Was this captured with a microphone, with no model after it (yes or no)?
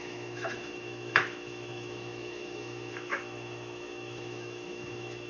no